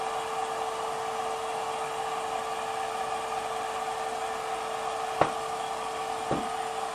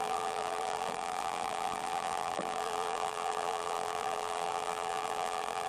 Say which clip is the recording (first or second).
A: first